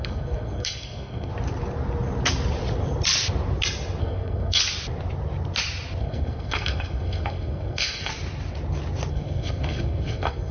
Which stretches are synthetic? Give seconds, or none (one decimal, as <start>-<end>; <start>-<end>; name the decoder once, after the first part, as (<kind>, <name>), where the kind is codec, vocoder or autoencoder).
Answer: 0.0-1.3 (codec, SNAC); 4.0-4.6; 6.0-8.1; 9.1-10.5